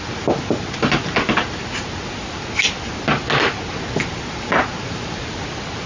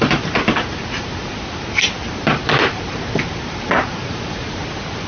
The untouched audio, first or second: first